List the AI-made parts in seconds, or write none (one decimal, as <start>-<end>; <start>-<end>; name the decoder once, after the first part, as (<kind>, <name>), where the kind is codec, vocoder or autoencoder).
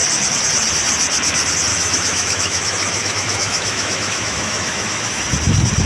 1.7-5.2 (autoencoder, DAC-VAE)